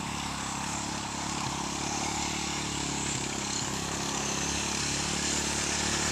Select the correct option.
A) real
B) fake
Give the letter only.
B